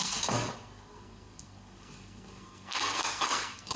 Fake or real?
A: fake